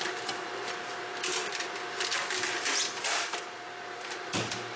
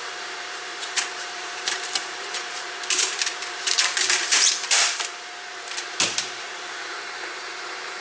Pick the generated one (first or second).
second